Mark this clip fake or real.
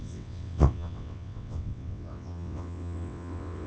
fake